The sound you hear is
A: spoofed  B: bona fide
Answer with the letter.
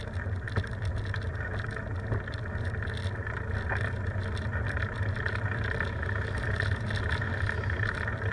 B